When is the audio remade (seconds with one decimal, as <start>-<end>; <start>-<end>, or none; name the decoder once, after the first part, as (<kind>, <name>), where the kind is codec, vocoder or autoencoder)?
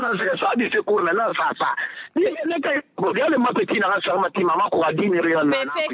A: 0.0-0.8 (autoencoder, DAC-VAE)